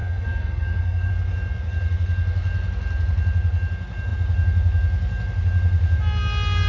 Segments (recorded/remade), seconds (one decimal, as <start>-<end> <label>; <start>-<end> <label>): 0.0-1.1 remade; 1.1-6.7 recorded